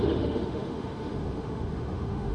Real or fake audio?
fake